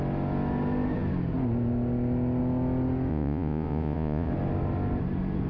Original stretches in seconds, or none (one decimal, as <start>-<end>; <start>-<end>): 0.0-3.1; 4.3-5.5